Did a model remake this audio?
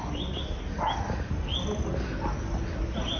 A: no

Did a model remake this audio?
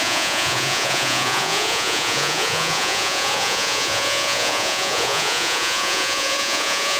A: yes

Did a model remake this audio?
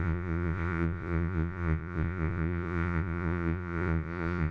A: yes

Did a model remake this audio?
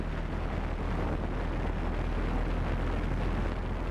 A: no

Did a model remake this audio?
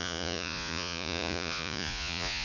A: yes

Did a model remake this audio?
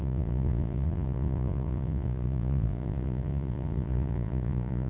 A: yes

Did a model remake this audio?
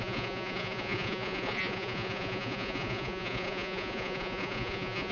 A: yes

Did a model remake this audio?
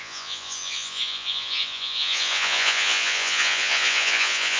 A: yes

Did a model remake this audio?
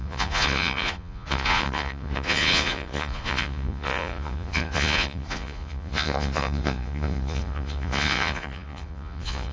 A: yes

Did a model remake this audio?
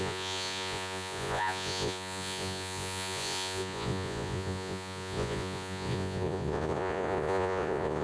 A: yes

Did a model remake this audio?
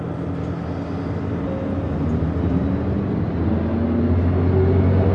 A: no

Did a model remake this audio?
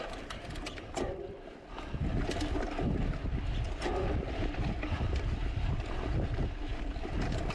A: no